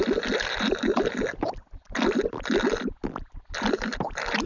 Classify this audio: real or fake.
real